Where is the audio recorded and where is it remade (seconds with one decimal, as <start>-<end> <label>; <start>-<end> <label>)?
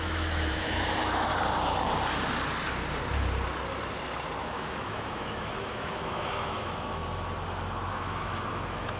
0.0-1.3 remade; 1.3-4.4 recorded; 4.4-7.0 remade; 7.0-7.9 recorded; 7.9-9.0 remade